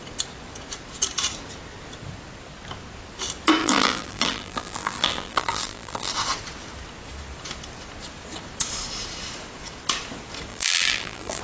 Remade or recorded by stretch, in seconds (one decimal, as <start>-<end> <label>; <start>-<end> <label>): 0.0-3.6 recorded; 3.6-6.1 remade; 6.1-10.5 recorded; 10.5-11.4 remade